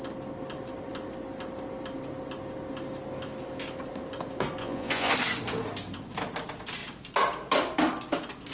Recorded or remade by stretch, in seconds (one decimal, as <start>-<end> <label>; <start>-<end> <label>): 0.0-4.6 recorded; 4.6-5.1 remade; 5.1-8.5 recorded